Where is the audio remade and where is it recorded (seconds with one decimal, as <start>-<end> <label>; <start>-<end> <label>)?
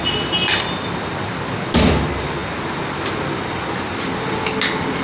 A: 0.0-5.0 recorded